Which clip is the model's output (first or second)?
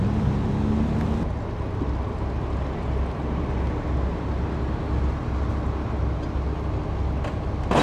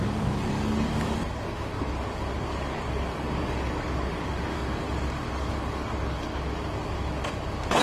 second